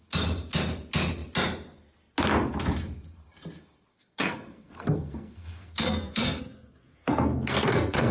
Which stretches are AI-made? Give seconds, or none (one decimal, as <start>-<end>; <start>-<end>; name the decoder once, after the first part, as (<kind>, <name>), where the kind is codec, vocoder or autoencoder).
3.9-8.1 (codec, SNAC)